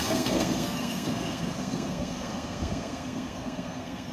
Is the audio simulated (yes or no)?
yes